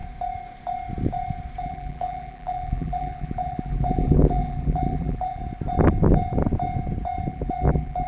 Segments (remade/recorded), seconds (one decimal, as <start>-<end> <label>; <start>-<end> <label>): 0.0-1.6 recorded; 1.6-5.4 remade; 5.4-7.3 recorded; 7.3-8.1 remade